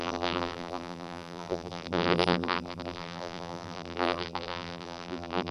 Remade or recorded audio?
remade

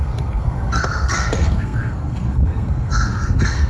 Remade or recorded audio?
remade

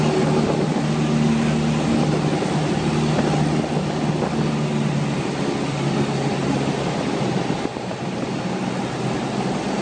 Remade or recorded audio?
recorded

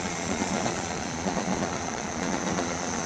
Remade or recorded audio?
remade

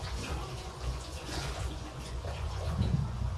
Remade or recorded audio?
remade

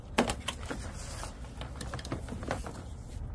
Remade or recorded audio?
recorded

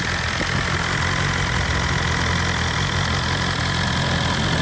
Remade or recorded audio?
recorded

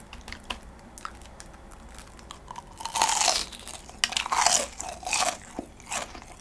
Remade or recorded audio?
recorded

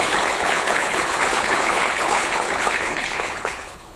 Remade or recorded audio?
remade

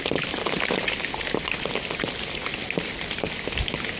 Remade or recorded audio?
recorded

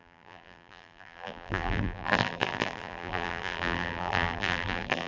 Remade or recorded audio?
remade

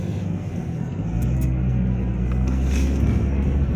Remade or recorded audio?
remade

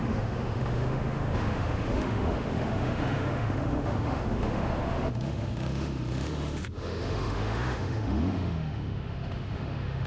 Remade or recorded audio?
remade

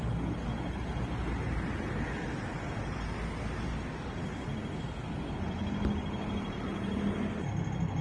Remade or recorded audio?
recorded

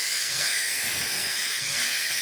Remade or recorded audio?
remade